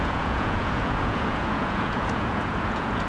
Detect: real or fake fake